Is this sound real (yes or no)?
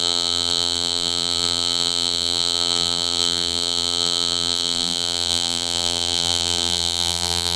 no